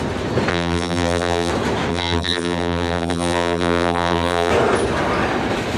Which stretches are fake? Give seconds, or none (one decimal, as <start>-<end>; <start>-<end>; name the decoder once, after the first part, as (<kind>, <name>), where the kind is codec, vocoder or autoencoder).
0.5-1.5 (vocoder, BigVGAN v2); 1.9-4.5